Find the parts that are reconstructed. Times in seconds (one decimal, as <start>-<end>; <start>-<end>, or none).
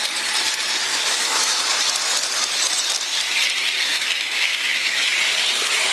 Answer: 0.9-1.6; 3.9-5.1